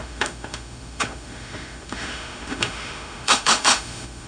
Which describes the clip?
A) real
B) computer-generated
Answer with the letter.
B